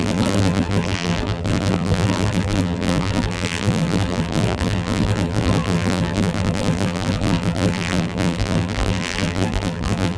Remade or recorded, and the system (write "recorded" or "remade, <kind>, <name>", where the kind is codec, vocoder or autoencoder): remade, vocoder, BigVGAN v2